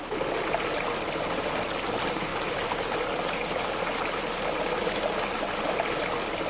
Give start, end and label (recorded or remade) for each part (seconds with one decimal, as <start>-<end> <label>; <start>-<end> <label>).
0.0-6.5 recorded